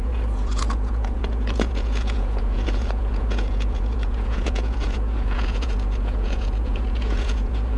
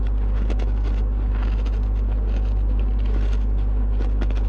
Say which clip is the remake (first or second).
first